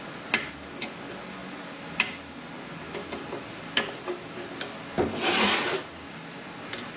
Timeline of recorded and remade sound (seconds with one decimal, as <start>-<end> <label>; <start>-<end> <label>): 0.0-5.7 recorded; 5.7-6.3 remade; 6.3-7.0 recorded